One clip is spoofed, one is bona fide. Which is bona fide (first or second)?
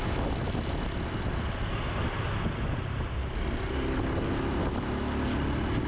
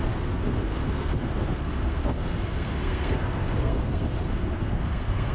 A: first